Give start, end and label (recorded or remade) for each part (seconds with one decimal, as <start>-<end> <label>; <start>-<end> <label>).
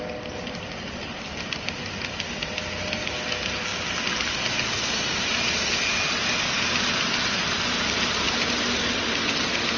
0.0-9.8 recorded